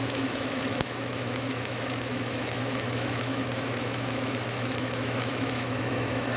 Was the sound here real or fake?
fake